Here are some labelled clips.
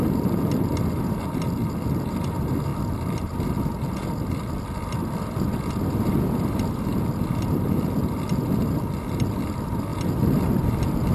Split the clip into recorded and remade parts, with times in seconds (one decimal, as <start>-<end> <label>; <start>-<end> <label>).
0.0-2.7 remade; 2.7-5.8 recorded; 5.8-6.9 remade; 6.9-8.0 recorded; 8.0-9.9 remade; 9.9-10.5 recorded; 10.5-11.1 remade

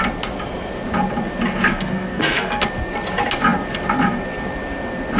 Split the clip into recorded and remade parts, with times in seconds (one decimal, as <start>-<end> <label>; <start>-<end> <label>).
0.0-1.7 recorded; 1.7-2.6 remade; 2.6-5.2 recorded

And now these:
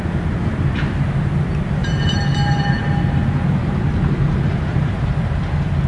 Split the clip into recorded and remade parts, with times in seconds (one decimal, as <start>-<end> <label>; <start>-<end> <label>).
0.0-1.8 recorded; 1.8-2.9 remade; 2.9-3.6 recorded; 3.6-5.9 remade

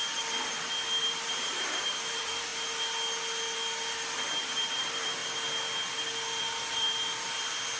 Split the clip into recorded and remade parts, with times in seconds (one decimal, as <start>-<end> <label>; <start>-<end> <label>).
0.0-1.0 recorded; 1.0-2.5 remade; 2.5-4.4 recorded; 4.4-5.2 remade; 5.2-6.4 recorded; 6.4-7.8 remade